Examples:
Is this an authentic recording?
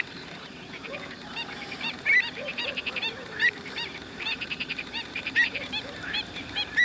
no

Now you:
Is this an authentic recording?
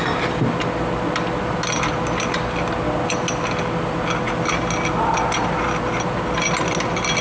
yes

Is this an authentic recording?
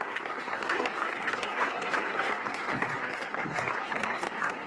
no